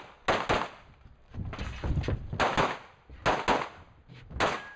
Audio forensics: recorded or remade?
recorded